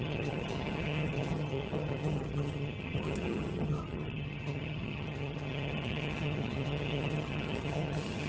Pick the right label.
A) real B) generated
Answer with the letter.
B